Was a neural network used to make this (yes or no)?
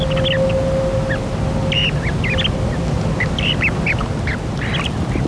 no